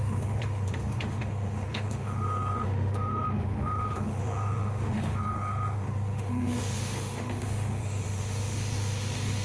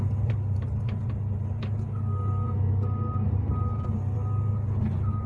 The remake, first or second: first